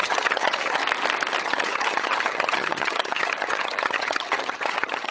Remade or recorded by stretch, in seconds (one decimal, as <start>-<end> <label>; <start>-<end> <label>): 0.0-0.8 remade; 0.8-1.4 recorded; 1.4-5.1 remade